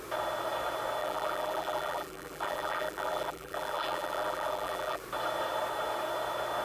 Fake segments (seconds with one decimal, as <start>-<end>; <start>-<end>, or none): 1.0-5.0